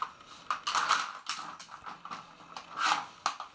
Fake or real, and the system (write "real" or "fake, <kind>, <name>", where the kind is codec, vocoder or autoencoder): real